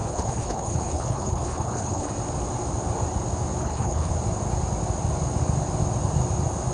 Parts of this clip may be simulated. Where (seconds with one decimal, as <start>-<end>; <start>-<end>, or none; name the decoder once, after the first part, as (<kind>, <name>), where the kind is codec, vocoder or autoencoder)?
0.0-2.1 (codec, HILCodec); 3.6-4.1